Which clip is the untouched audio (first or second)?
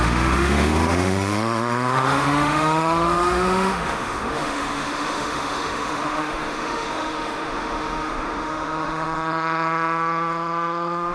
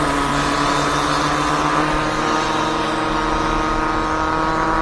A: second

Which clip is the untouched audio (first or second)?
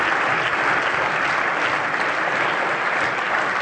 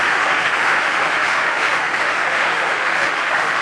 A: first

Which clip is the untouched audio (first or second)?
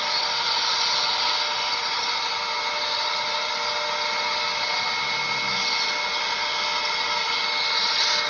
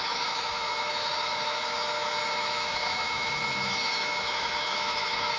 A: first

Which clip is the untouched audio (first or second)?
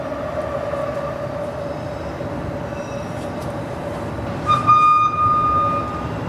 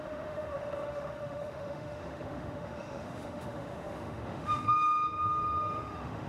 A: first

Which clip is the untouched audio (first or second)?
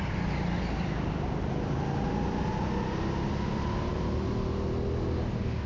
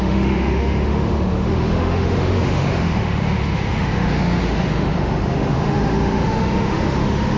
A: first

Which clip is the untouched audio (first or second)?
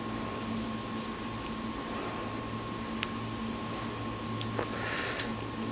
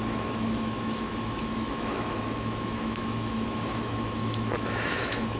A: first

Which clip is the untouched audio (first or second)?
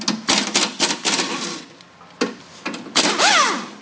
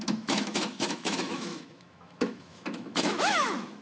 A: first